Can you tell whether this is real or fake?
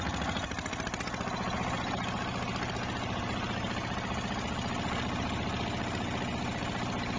real